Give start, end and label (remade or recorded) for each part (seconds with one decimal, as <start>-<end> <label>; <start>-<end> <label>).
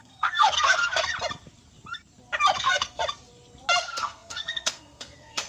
0.0-1.1 remade; 1.1-2.6 recorded; 2.6-3.0 remade; 3.0-3.8 recorded; 3.8-5.5 remade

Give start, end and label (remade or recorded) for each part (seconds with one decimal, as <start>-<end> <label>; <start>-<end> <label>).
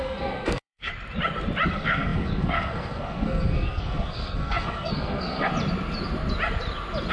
0.0-0.9 remade; 0.9-1.7 recorded; 1.7-5.5 remade; 5.5-7.1 recorded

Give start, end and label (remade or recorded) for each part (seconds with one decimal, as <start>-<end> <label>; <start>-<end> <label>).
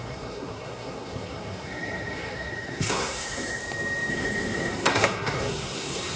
0.0-3.6 remade; 3.6-4.1 recorded; 4.1-6.2 remade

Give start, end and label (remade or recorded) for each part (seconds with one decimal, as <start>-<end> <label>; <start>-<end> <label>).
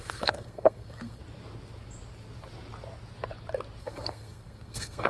0.0-1.2 remade; 1.2-3.8 recorded; 3.8-5.1 remade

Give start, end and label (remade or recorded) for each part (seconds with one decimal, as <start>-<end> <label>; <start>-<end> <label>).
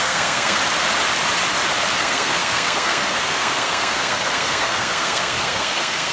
0.0-0.6 remade; 0.6-2.0 recorded; 2.0-6.1 remade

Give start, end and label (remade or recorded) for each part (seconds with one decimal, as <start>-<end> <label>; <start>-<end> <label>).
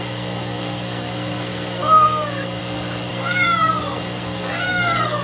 0.0-2.6 remade; 2.6-3.1 recorded; 3.1-5.2 remade